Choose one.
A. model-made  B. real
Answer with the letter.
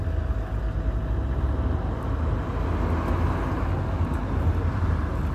B